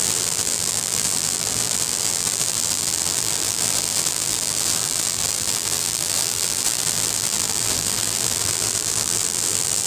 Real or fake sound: fake